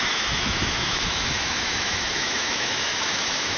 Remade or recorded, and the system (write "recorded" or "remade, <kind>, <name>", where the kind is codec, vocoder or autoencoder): remade, autoencoder, DAC-VAE